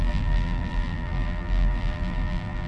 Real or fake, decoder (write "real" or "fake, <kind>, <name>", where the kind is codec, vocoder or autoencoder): fake, vocoder, BigVGAN v2